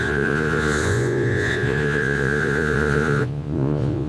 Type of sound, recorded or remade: remade